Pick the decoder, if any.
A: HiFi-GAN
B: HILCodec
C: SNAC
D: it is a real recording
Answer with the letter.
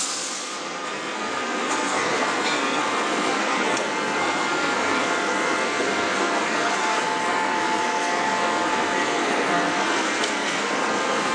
C